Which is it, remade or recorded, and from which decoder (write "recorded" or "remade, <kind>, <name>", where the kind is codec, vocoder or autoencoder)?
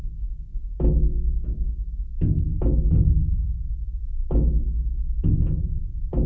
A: recorded